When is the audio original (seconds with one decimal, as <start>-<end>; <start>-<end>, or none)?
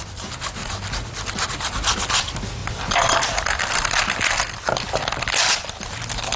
0.0-6.4